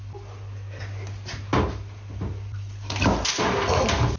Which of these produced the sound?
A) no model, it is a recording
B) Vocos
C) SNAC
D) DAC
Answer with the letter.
A